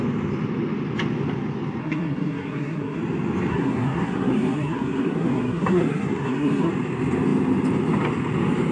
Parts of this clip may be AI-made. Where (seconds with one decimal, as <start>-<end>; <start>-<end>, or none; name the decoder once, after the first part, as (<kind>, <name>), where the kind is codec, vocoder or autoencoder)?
1.8-3.0 (codec, SNAC); 3.5-6.7